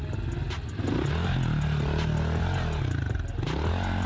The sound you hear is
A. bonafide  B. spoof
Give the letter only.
A